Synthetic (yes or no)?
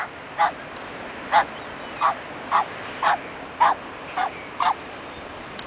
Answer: no